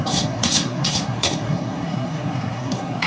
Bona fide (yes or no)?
no